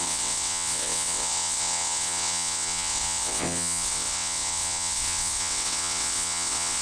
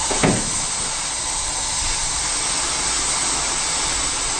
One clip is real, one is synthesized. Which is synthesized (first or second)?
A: first